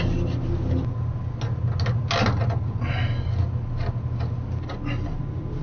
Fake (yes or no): no